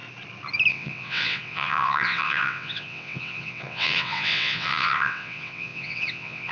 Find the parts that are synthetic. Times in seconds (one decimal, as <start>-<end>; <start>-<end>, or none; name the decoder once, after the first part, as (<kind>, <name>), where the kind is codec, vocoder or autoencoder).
0.7-6.5 (vocoder, WaveNeXt)